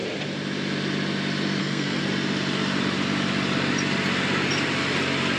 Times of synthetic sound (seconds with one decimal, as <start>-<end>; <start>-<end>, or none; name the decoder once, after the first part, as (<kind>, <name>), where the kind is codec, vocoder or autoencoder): 1.6-2.0 (codec, SNAC)